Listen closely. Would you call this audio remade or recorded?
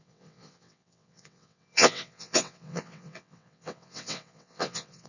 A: remade